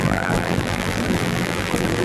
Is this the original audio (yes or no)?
no